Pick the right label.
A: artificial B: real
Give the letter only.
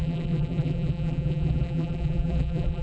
A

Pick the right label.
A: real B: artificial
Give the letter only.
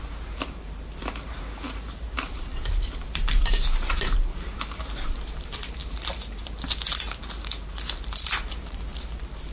B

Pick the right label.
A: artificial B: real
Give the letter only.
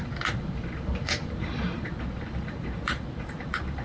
A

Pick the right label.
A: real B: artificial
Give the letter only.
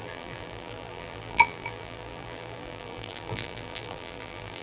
B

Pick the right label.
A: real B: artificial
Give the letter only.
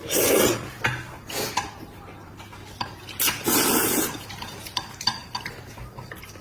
A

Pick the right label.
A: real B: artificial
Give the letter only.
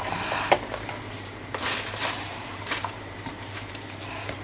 B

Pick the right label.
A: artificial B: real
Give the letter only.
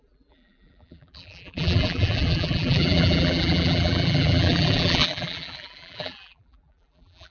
A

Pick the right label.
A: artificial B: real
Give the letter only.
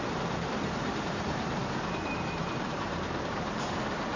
A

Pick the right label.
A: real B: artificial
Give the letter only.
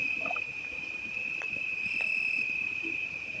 B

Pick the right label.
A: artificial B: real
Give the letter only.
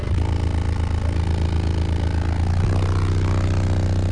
B